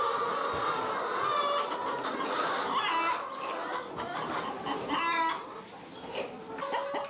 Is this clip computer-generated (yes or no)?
no